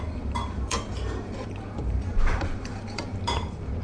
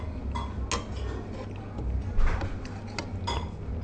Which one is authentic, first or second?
second